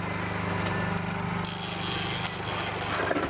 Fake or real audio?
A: real